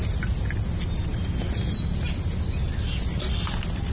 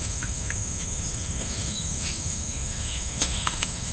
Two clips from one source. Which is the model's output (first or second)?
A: second